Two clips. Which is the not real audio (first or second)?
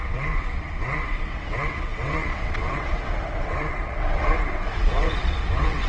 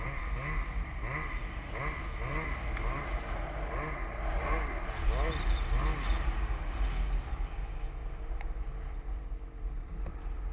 first